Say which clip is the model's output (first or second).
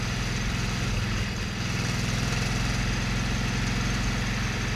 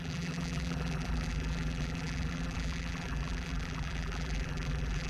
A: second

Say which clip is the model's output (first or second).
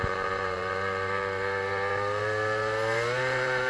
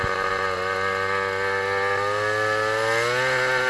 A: first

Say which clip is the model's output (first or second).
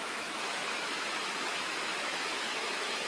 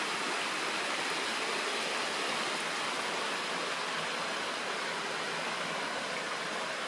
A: first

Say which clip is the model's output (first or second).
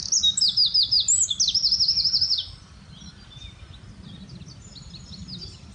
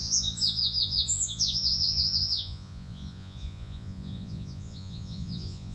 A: second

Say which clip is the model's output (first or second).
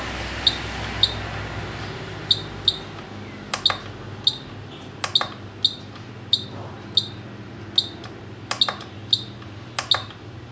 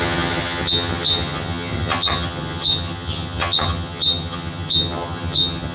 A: second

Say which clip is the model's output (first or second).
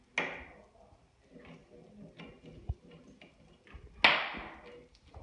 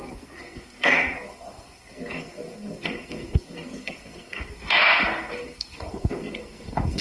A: second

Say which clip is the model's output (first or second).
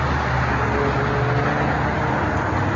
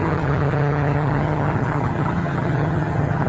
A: second